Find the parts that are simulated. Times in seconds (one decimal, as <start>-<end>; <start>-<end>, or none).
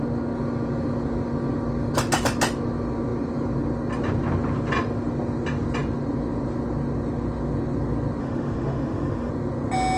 8.2-9.3